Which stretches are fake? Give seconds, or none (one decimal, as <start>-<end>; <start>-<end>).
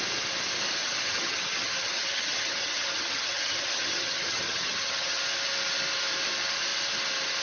0.8-5.2